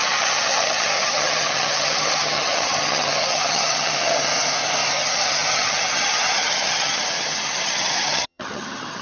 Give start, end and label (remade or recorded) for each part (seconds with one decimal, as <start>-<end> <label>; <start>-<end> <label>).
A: 0.0-4.3 remade; 4.3-4.9 recorded; 4.9-9.0 remade